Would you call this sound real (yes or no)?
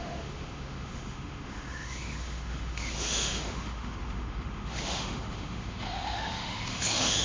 no